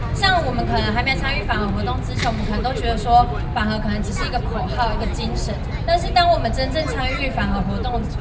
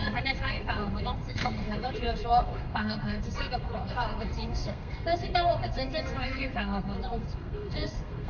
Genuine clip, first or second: first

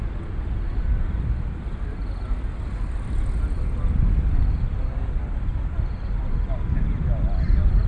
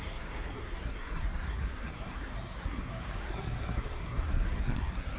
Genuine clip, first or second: first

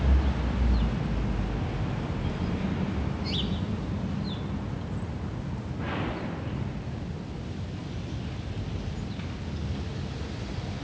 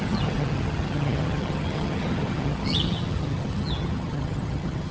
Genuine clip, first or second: first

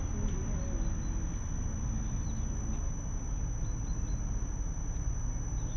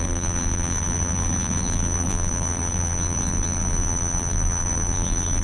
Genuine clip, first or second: first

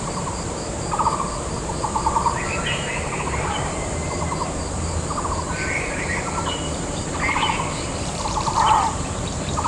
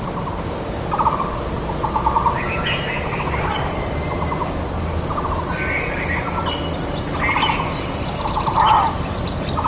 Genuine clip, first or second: second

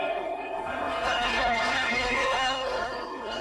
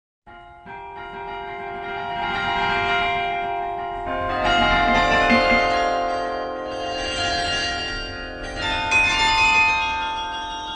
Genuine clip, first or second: second